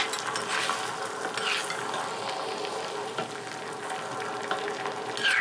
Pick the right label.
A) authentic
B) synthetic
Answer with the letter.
A